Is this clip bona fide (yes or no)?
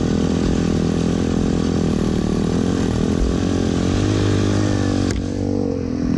yes